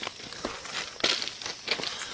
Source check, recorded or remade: recorded